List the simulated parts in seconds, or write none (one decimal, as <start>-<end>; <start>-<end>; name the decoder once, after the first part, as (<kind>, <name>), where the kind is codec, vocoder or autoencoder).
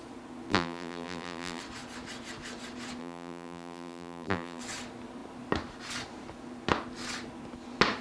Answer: 0.5-1.6 (vocoder, BigVGAN v2); 3.0-4.6